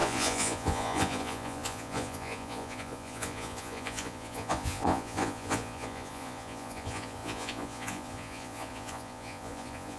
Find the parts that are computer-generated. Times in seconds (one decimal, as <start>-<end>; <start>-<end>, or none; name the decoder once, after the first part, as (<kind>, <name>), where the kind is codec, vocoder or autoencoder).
0.0-10.0 (vocoder, Vocos)